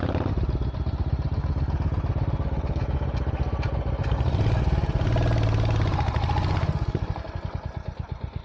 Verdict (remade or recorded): recorded